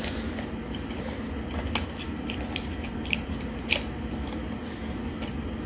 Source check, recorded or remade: recorded